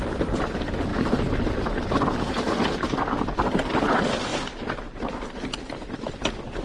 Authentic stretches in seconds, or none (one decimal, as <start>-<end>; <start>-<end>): 0.0-6.6